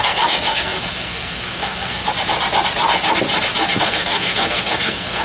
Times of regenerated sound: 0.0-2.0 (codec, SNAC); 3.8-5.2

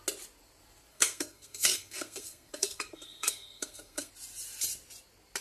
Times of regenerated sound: 0.9-4.1 (codec, SNAC)

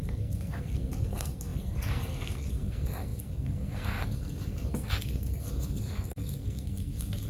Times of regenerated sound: 0.0-7.3 (codec, SNAC)

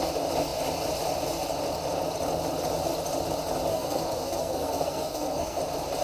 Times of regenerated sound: 3.7-5.6 (codec, SNAC)

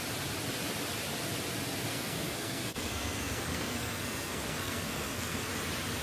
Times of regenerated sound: 1.9-5.5 (codec, SNAC)

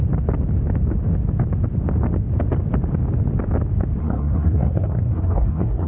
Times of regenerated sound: 4.0-5.9 (codec, SNAC)